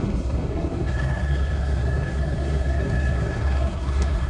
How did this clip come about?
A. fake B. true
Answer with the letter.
A